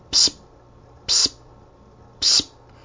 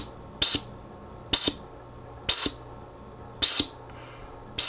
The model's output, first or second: first